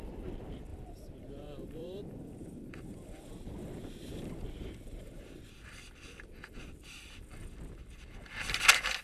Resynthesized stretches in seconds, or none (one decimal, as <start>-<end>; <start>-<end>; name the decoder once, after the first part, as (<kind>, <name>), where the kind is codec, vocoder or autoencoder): 0.7-5.2 (vocoder, BigVGAN v2)